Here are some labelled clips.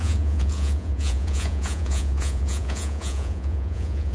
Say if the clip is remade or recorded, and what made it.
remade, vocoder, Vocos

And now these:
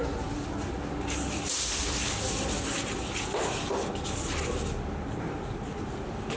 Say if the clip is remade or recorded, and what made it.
recorded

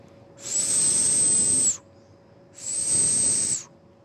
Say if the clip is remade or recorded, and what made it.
recorded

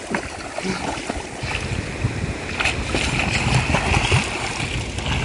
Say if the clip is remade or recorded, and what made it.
recorded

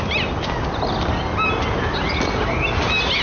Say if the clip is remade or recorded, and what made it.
recorded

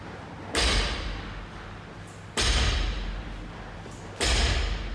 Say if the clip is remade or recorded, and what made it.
recorded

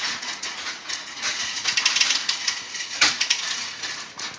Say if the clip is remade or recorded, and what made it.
remade, vocoder, Vocos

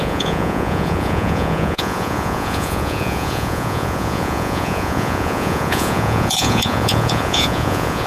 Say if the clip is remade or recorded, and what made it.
remade, vocoder, Vocos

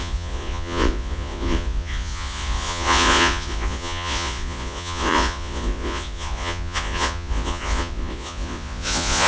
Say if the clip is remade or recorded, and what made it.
remade, vocoder, Vocos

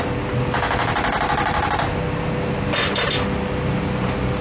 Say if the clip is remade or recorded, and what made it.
recorded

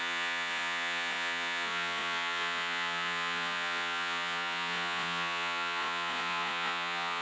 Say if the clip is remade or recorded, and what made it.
remade, vocoder, Vocos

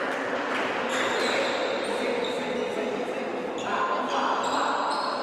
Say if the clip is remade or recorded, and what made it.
recorded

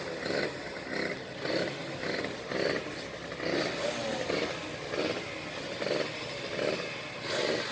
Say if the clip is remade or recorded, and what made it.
recorded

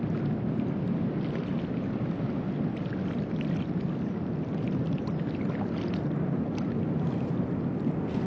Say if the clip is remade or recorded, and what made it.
recorded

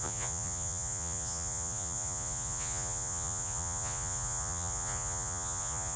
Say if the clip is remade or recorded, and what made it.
remade, vocoder, Vocos